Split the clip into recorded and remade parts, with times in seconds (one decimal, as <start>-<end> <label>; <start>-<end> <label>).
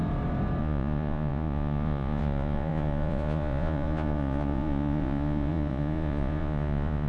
0.0-0.6 recorded; 0.6-7.1 remade